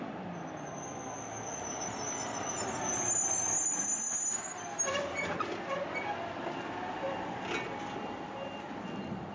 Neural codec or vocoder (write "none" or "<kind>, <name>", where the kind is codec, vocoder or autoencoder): none